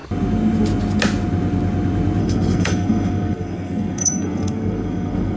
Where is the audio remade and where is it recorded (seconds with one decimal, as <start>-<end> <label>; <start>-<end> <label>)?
0.0-2.2 recorded; 2.2-5.4 remade